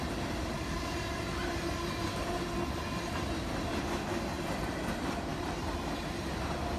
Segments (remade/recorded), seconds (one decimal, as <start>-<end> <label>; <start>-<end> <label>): 0.0-6.8 recorded